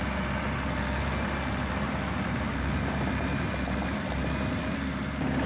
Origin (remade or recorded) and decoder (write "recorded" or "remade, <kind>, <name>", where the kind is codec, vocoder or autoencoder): recorded